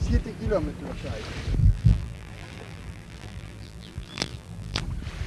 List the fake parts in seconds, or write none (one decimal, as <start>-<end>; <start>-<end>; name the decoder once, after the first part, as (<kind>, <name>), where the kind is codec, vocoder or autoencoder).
1.6-4.8 (vocoder, BigVGAN v2)

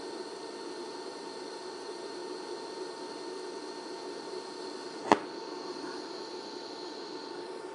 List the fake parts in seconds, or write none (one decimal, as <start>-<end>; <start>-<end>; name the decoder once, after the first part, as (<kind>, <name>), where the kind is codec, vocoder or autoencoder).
0.0-2.2 (vocoder, BigVGAN v2); 6.5-7.7

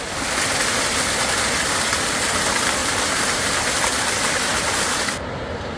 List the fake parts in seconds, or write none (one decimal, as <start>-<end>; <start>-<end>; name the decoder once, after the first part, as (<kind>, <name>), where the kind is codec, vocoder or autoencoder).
2.8-3.7 (vocoder, BigVGAN v2)